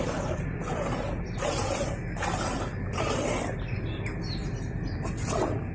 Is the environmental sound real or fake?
real